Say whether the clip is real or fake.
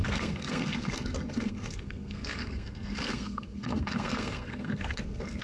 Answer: fake